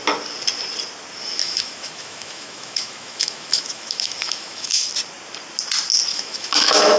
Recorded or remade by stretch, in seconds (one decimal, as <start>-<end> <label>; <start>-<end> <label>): 0.0-1.4 recorded; 1.4-4.9 remade; 4.9-6.1 recorded; 6.1-7.0 remade